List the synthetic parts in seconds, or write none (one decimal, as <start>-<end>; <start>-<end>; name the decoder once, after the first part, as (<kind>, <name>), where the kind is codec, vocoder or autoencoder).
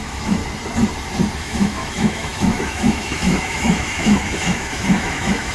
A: 0.0-0.4 (autoencoder, DAC-VAE); 1.4-5.5